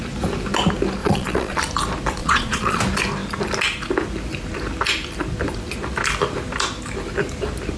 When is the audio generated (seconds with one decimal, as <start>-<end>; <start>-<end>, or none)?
1.0-1.6; 2.2-2.8